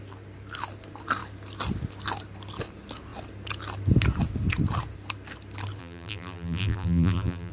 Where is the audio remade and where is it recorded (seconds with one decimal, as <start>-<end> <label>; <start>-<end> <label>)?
0.0-5.8 recorded; 5.8-7.5 remade